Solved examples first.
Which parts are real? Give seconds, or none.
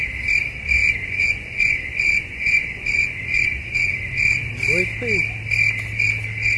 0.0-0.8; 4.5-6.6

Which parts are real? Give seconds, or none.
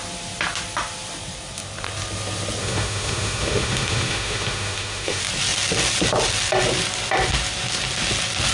0.0-2.6; 5.2-8.5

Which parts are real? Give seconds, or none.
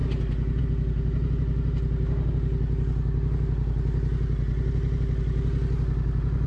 0.0-6.5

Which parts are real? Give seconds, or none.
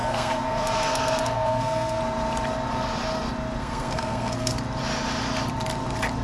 2.0-3.6; 4.5-6.2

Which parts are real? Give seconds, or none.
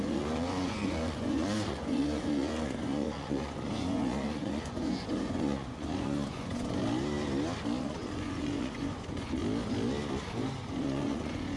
6.8-7.8; 9.4-10.8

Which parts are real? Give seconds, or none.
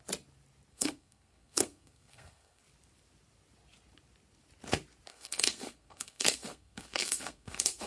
0.0-0.7; 2.6-5.1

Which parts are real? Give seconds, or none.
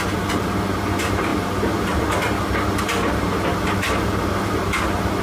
none